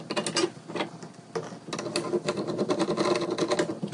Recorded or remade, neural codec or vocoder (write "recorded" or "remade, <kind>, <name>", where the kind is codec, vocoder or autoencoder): recorded